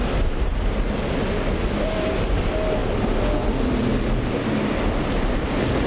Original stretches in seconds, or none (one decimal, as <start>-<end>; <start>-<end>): 0.0-5.9